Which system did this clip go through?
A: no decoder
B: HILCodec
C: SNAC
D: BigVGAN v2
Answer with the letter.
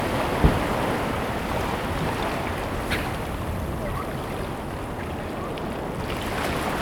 A